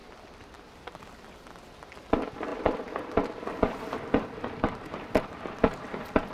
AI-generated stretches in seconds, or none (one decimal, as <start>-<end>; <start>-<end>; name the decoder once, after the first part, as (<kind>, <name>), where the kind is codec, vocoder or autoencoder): none

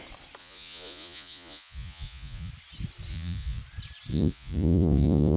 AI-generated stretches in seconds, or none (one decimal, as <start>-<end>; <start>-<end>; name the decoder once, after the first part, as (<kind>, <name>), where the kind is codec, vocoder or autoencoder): 0.4-2.5 (vocoder, Vocos); 3.1-3.6; 4.1-5.4

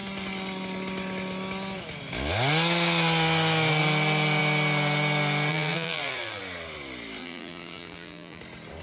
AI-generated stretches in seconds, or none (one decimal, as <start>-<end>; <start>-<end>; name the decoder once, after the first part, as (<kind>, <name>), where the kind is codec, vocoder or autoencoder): 5.5-6.4 (vocoder, BigVGAN v2); 7.2-8.4

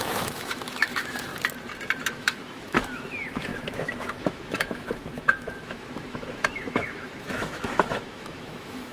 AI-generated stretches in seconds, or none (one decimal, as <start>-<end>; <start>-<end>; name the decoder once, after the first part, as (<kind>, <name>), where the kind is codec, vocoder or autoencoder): 0.0-1.3 (autoencoder, DAC-VAE); 2.0-8.9

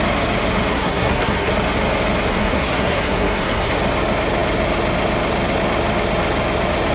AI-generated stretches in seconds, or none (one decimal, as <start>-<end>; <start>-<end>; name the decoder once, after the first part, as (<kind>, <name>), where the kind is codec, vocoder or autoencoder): 0.7-1.5 (codec, SNAC); 2.3-3.7

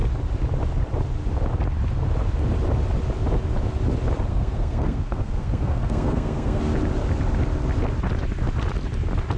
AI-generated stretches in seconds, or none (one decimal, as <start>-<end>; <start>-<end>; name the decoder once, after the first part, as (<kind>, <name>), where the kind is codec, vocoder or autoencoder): 4.3-6.6 (codec, SNAC)

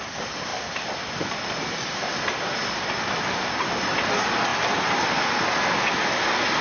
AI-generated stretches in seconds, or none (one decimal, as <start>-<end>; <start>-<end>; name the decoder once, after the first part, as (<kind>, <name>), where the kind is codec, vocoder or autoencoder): 0.5-4.0 (vocoder, BigVGAN v2); 4.5-5.1